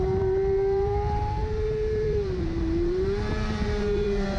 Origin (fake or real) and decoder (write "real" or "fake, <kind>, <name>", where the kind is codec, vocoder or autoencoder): fake, vocoder, BigVGAN v2